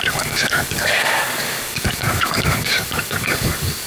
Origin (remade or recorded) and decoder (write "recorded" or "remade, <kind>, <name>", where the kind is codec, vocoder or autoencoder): remade, codec, DAC